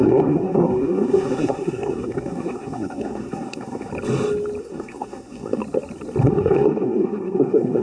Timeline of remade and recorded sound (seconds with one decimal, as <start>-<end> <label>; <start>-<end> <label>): 0.0-3.9 remade; 3.9-4.6 recorded; 4.6-5.6 remade; 5.6-6.2 recorded; 6.2-7.8 remade